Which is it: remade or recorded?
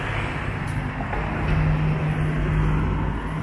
recorded